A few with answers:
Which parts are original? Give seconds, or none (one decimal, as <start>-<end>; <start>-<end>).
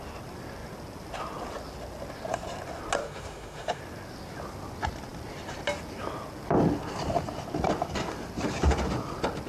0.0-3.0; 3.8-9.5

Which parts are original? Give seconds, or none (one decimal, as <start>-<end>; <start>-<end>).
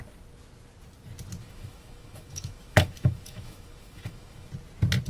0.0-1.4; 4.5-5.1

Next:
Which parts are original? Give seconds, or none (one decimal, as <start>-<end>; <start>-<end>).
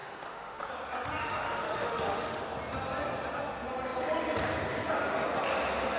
0.7-1.2; 2.4-6.0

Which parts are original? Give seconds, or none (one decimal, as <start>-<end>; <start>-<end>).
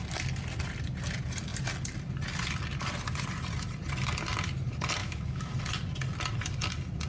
0.0-5.0; 5.5-7.1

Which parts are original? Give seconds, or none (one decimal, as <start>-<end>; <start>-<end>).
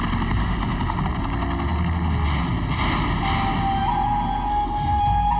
0.0-0.4; 1.0-4.5; 5.0-5.4